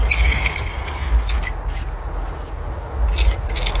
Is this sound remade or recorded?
recorded